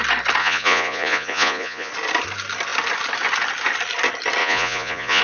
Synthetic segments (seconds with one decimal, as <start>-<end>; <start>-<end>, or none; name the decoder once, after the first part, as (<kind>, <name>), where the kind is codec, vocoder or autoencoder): 0.4-1.9 (vocoder, Vocos); 4.4-5.2